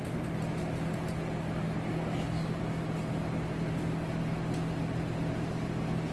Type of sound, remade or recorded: recorded